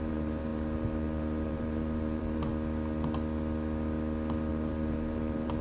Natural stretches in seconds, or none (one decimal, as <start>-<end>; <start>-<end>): 2.5-4.5